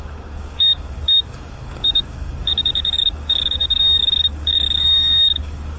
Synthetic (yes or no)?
yes